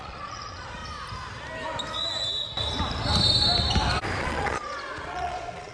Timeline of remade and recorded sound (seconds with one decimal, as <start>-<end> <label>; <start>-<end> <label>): 0.0-0.8 remade; 0.8-4.2 recorded; 4.2-5.7 remade